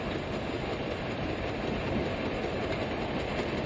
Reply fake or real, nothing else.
real